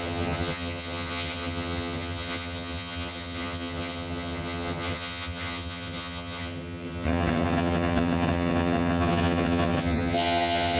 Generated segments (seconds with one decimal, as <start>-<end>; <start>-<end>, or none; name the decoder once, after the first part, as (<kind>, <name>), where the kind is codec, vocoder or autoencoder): 0.0-10.8 (vocoder, HiFi-GAN)